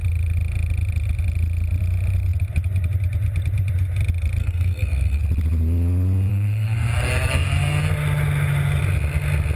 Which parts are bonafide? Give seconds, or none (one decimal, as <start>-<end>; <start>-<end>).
0.0-4.4; 5.2-6.3; 7.8-9.6